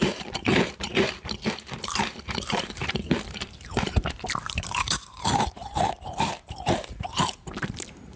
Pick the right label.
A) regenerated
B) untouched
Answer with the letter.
A